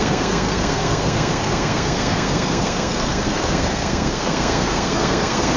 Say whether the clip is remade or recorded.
remade